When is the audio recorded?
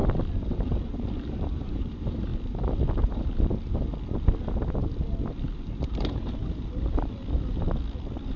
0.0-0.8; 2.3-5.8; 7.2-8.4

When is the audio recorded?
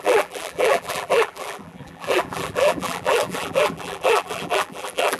none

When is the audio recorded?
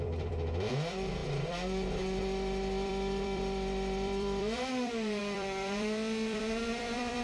none